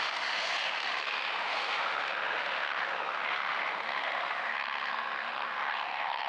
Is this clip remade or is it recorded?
remade